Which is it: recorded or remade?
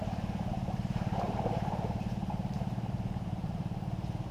remade